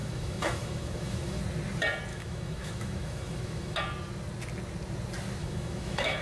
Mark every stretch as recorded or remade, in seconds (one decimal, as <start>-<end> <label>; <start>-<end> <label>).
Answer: 0.0-1.4 remade; 1.4-2.1 recorded; 2.1-3.8 remade; 3.8-5.4 recorded; 5.4-6.2 remade